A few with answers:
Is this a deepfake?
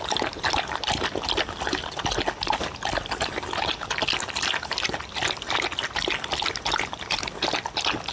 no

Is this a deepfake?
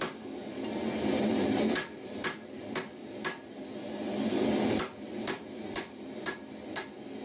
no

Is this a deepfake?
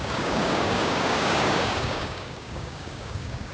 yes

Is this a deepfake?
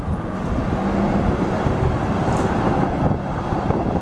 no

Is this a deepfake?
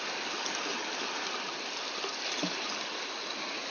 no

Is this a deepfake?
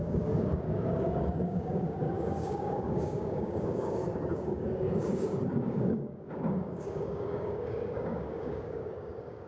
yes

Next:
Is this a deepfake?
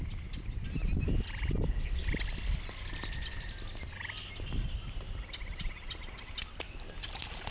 no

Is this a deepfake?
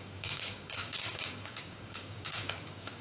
yes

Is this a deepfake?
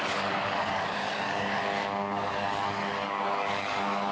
yes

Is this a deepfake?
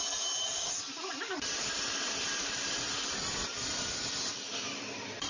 no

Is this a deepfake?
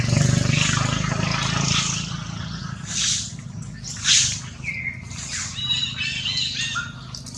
no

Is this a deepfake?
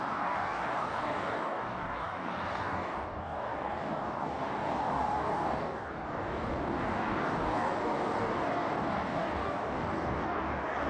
yes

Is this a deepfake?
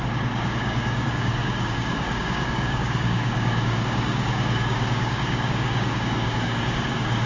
yes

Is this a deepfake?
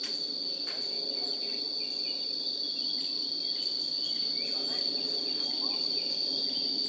no